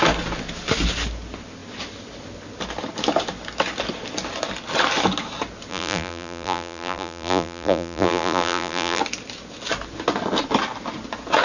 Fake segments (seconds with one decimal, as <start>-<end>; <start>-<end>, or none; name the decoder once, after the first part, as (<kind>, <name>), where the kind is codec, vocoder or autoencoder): 5.7-9.0 (vocoder, BigVGAN v2)